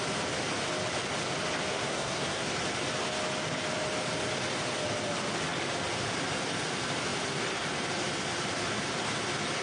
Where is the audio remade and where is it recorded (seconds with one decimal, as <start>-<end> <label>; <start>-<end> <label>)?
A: 0.0-1.7 recorded; 1.7-2.5 remade; 2.5-9.6 recorded